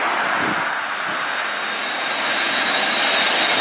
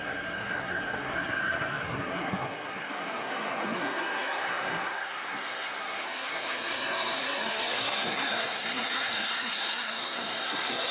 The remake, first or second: second